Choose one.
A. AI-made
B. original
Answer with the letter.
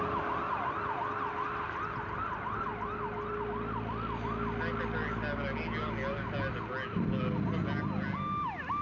B